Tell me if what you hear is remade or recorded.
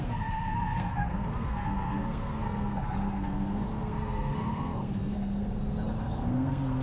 remade